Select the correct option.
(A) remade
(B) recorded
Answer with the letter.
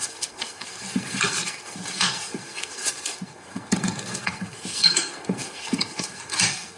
A